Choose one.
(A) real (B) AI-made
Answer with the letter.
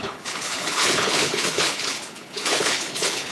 B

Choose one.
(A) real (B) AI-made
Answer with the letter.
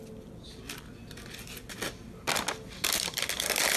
A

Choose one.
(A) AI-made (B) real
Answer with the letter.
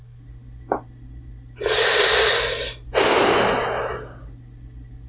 B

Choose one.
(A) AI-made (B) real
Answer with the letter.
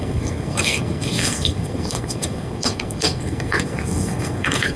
A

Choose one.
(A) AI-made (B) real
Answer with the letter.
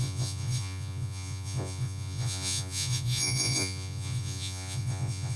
A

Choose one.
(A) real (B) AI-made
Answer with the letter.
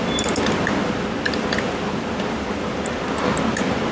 A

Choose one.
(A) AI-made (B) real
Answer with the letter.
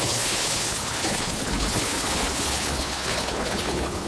A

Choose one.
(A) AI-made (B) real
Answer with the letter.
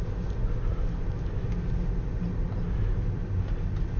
B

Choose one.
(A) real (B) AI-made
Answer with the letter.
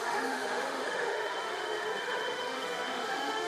B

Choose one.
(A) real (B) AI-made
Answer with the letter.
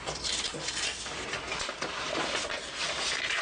A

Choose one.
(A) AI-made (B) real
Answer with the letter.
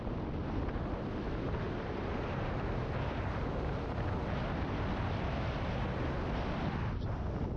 B